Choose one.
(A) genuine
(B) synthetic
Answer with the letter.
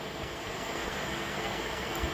B